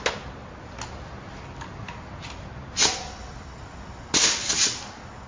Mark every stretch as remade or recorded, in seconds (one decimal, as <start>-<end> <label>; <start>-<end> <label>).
0.0-5.3 recorded